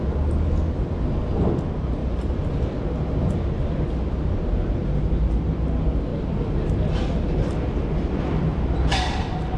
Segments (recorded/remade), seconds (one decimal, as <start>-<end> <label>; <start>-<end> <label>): 0.0-2.0 recorded; 2.0-2.7 remade; 2.7-6.1 recorded; 6.1-9.6 remade